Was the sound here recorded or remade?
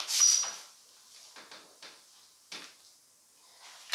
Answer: recorded